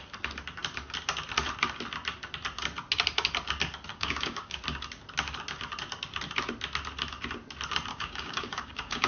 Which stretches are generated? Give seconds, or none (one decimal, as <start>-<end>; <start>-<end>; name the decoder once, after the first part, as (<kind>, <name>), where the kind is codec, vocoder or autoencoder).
3.9-4.6 (codec, DAC); 7.9-9.1